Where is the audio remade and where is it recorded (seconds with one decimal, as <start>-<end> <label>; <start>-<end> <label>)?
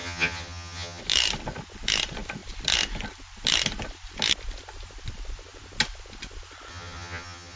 0.0-1.0 remade; 1.0-6.7 recorded; 6.7-7.6 remade